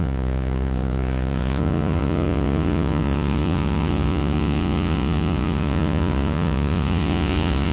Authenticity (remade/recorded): remade